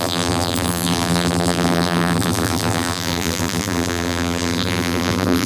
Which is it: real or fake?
fake